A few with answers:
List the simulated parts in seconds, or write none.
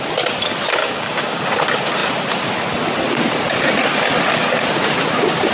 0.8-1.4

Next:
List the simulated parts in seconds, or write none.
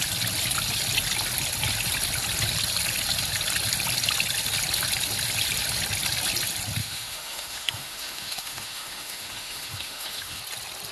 6.8-10.4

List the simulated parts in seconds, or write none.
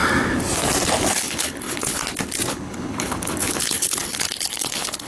1.1-2.0; 2.5-5.1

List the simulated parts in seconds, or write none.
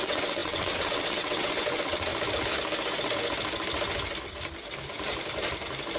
0.0-2.1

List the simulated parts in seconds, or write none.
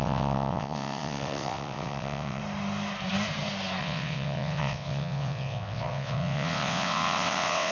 0.0-2.4; 3.8-7.7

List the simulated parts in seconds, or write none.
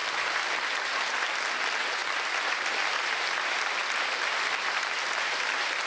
none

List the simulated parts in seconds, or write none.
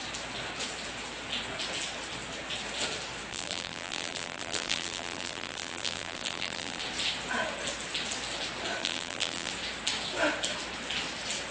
3.3-6.8; 8.8-9.5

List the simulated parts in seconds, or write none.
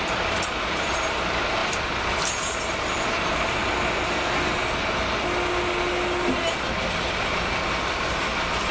0.0-3.6; 7.5-8.7